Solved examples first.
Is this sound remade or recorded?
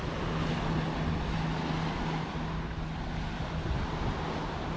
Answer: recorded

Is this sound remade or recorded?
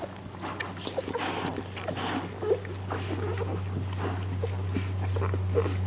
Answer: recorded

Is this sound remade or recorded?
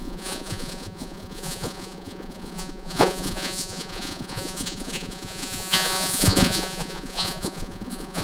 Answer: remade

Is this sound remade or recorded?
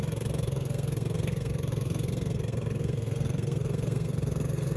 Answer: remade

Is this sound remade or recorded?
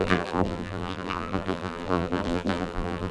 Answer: remade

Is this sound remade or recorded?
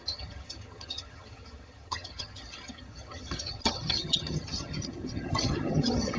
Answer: remade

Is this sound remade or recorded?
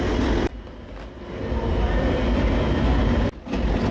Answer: remade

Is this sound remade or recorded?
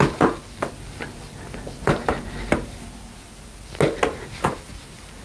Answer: recorded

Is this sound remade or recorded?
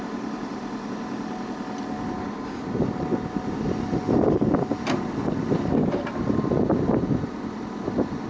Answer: recorded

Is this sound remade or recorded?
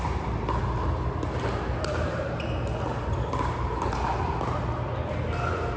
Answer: recorded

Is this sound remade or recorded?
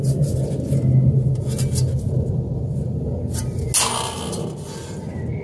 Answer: recorded